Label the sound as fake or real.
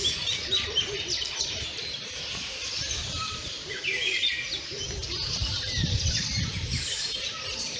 fake